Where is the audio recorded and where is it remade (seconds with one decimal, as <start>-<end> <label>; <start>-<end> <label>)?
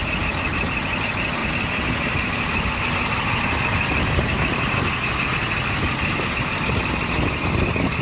0.0-1.4 recorded; 1.4-2.7 remade; 2.7-8.0 recorded